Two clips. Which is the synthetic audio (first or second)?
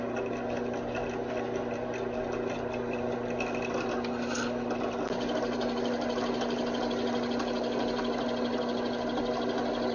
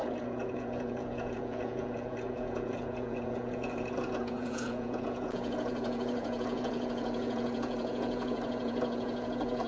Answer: second